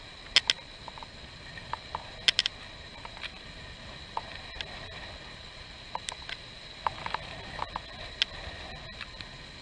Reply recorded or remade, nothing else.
recorded